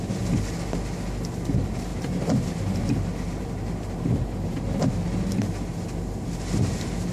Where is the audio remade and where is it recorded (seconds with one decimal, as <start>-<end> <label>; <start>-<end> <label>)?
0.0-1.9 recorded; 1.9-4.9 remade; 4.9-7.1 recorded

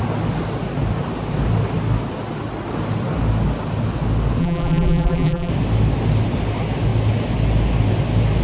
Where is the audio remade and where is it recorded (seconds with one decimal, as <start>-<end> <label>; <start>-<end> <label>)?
0.0-4.4 recorded; 4.4-5.5 remade; 5.5-8.4 recorded

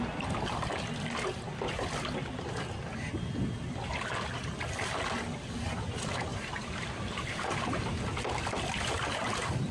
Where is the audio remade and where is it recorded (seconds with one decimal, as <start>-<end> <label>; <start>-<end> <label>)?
0.0-6.3 recorded; 6.3-7.9 remade; 7.9-9.7 recorded

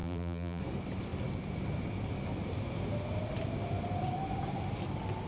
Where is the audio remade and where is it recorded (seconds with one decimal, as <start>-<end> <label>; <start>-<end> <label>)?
0.0-0.6 remade; 0.6-5.3 recorded

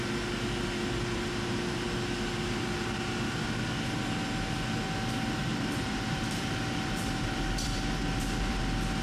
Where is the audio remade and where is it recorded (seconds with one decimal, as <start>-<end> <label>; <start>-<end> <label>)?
0.0-5.5 recorded; 5.5-8.6 remade; 8.6-9.0 recorded

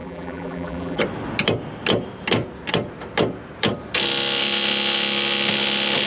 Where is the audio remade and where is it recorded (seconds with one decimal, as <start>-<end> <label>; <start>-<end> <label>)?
0.0-1.0 remade; 1.0-6.1 recorded

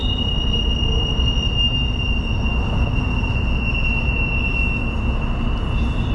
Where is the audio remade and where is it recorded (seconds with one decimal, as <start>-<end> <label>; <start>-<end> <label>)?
0.0-1.2 remade; 1.2-6.1 recorded